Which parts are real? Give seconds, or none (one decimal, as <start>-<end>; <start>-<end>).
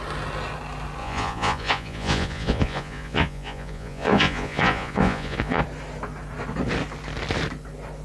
0.0-1.0; 5.6-8.0